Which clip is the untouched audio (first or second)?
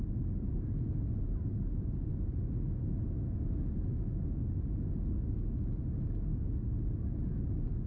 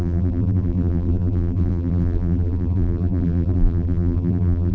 first